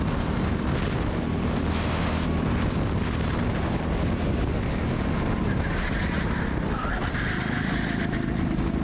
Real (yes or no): yes